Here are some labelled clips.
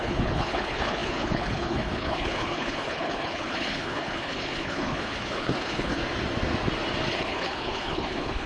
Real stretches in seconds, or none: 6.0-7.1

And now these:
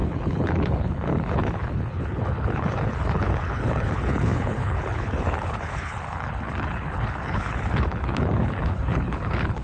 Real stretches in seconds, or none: none

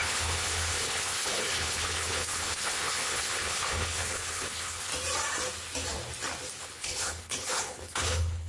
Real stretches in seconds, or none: 4.9-6.6